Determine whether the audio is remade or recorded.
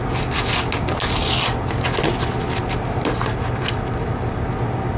recorded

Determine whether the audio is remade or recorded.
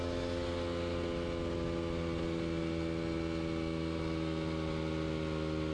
recorded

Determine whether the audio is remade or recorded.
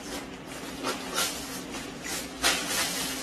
recorded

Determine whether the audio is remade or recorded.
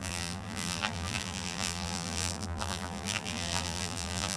remade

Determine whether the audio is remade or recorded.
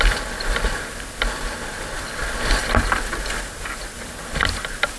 recorded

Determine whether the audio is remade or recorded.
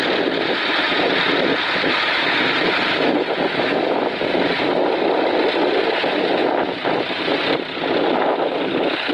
recorded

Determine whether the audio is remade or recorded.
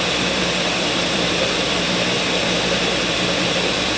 remade